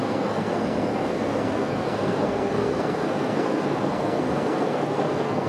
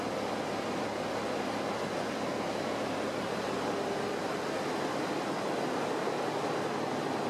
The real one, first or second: second